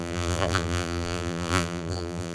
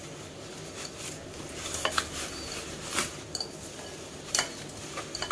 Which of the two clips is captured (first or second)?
second